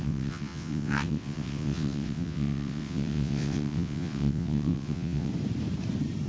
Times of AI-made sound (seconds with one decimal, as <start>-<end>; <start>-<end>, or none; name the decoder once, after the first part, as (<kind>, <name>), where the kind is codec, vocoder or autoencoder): 0.0-5.3 (vocoder, WaveNeXt)